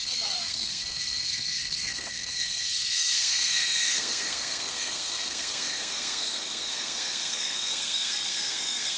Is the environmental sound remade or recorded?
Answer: remade